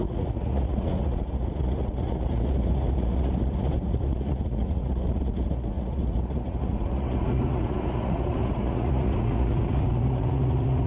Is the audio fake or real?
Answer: fake